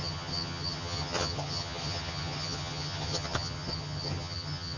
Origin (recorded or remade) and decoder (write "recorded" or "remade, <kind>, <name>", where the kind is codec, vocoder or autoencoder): remade, vocoder, HiFi-GAN